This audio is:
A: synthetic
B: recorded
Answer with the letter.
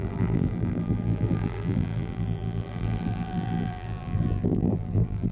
A